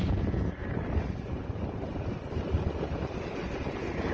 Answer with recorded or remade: recorded